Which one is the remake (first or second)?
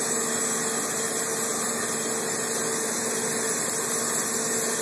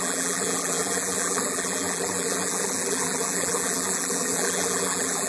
second